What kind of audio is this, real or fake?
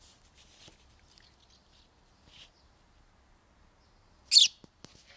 real